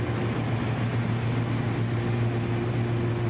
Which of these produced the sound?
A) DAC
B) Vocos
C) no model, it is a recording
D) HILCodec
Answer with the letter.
C